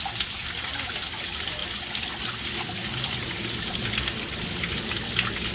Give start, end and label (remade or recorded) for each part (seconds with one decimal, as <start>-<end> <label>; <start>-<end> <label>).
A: 0.0-5.5 recorded

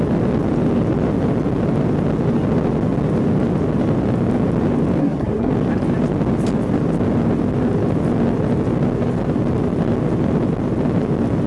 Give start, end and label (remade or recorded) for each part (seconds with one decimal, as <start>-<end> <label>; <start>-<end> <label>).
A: 0.0-5.0 recorded; 5.0-5.5 remade; 5.5-11.5 recorded

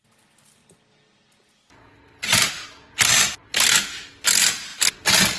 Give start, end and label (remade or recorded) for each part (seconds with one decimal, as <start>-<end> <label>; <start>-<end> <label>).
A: 0.0-5.4 recorded

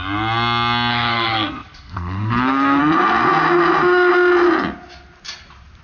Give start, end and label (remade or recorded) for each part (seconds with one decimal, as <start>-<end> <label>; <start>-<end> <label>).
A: 0.0-0.9 recorded; 0.9-2.8 remade; 2.8-5.8 recorded